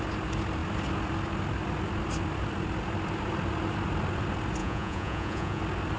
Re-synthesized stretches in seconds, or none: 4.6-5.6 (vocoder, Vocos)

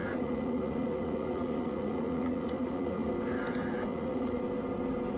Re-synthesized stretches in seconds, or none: 0.0-3.1 (vocoder, Vocos); 3.9-4.4

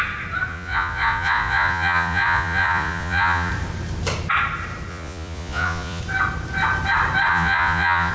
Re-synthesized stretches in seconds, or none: 0.5-3.5 (vocoder, Vocos); 4.9-6.0; 7.3-8.1

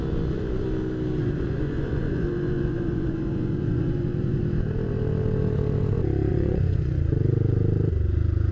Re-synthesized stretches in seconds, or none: 1.2-4.4 (vocoder, Vocos); 6.3-7.0

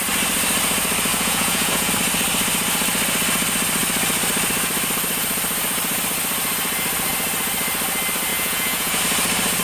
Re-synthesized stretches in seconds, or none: 1.1-1.9 (vocoder, Vocos); 8.3-9.0

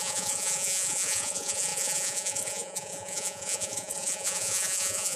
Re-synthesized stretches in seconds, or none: 0.0-5.2 (vocoder, Vocos)

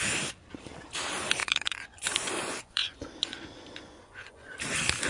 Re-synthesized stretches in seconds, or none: 1.4-4.5 (vocoder, Vocos)

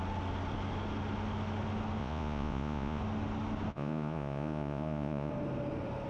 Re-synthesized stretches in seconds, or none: 2.0-3.0 (vocoder, Vocos); 3.7-5.3